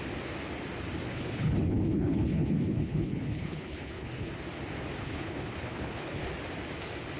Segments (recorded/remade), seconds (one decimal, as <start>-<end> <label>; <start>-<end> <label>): 0.0-1.1 recorded; 1.1-4.3 remade; 4.3-5.0 recorded; 5.0-6.3 remade; 6.3-7.2 recorded